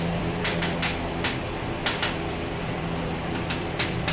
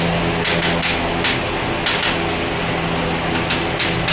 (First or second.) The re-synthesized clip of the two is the first